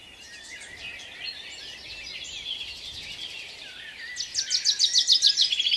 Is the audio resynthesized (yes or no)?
no